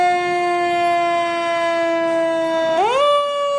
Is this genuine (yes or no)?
yes